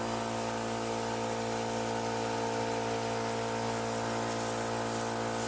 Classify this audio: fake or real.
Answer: real